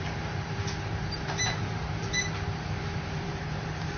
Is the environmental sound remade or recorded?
remade